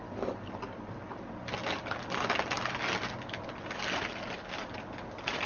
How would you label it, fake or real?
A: real